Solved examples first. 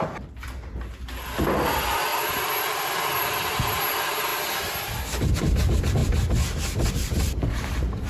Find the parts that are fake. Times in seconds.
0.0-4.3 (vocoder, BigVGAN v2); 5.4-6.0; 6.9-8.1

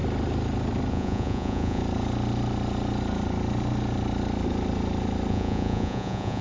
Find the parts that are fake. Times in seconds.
0.9-1.8 (vocoder, Vocos); 5.3-6.4